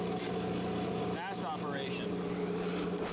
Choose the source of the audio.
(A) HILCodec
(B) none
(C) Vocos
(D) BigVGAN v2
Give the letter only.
B